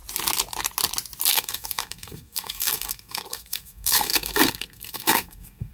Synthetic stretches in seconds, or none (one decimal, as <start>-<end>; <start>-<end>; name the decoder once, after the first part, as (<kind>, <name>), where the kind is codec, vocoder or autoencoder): 1.3-5.7 (codec, SNAC)